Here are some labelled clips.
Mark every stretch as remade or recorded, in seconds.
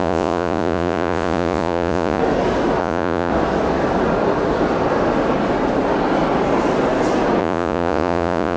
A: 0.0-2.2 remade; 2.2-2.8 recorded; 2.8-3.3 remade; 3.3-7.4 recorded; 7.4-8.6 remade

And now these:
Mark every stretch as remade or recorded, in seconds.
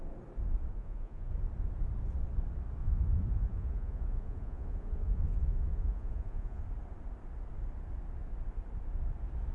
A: 0.0-0.7 recorded; 0.7-1.3 remade; 1.3-2.8 recorded; 2.8-6.6 remade; 6.6-9.5 recorded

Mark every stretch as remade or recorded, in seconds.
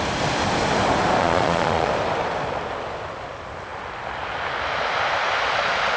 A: 0.0-1.2 recorded; 1.2-1.9 remade; 1.9-6.0 recorded